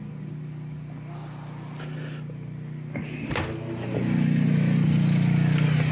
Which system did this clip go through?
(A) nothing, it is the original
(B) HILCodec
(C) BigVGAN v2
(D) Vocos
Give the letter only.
A